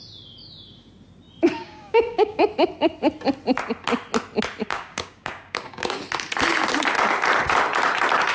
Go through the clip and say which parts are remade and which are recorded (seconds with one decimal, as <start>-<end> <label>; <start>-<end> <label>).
0.0-1.6 recorded; 1.6-2.5 remade; 2.5-4.6 recorded; 4.6-6.0 remade; 6.0-8.3 recorded

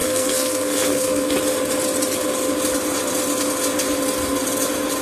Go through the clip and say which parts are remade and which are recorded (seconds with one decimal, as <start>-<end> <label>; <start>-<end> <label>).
0.0-1.3 remade; 1.3-5.0 recorded

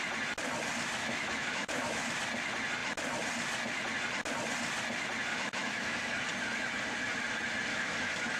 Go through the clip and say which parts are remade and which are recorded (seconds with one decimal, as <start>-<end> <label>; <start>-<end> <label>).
0.0-1.0 recorded; 1.0-2.1 remade; 2.1-5.3 recorded; 5.3-6.0 remade; 6.0-7.7 recorded; 7.7-8.4 remade

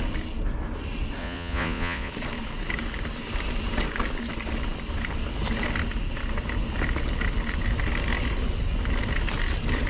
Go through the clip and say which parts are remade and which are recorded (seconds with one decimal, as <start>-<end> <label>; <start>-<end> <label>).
0.0-1.2 recorded; 1.2-2.1 remade; 2.1-9.9 recorded

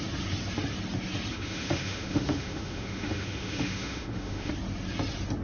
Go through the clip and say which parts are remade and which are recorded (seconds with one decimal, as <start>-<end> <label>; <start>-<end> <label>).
0.0-1.3 recorded; 1.3-4.5 remade; 4.5-5.4 recorded

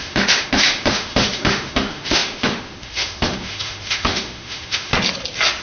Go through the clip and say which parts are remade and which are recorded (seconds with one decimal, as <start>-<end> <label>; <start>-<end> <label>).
0.0-4.9 remade; 4.9-5.6 recorded

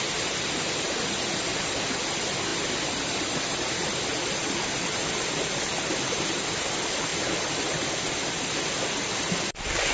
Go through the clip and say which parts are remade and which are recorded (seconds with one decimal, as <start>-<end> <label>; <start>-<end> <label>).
0.0-9.9 recorded